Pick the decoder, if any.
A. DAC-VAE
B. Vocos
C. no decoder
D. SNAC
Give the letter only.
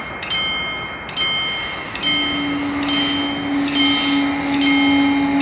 C